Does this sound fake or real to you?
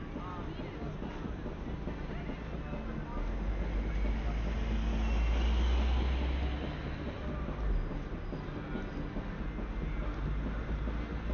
real